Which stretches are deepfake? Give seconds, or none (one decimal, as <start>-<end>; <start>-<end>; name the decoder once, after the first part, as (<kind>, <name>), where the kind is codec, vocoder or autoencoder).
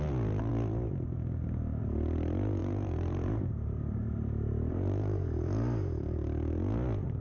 2.6-6.0 (vocoder, BigVGAN v2)